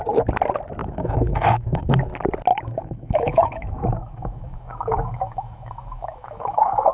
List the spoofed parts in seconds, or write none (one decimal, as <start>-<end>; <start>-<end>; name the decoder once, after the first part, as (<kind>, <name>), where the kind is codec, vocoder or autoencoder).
0.8-2.0 (autoencoder, DAC-VAE); 2.5-6.9